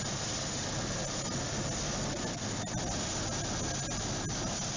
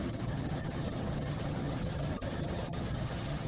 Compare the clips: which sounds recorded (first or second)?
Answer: first